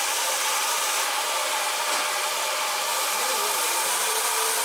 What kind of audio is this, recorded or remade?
recorded